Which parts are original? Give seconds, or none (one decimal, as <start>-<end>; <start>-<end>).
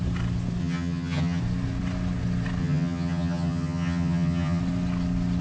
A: 0.0-0.6; 1.4-2.6; 4.6-5.4